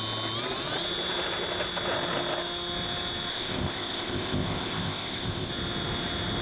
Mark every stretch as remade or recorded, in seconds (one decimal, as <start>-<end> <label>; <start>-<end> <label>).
0.0-3.3 recorded; 3.3-5.5 remade; 5.5-6.4 recorded